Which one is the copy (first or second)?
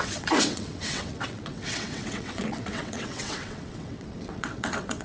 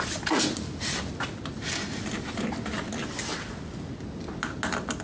first